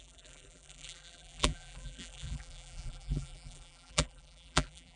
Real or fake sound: fake